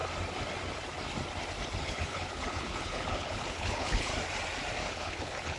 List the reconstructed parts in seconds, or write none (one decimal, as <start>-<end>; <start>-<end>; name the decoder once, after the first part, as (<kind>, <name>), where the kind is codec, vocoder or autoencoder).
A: 1.8-4.1 (codec, HILCodec); 4.8-5.6